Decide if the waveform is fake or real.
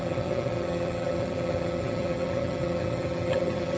fake